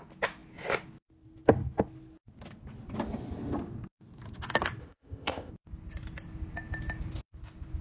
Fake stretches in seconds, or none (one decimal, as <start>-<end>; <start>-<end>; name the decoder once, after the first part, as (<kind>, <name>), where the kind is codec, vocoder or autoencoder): 4.8-5.5 (codec, ZipCodec)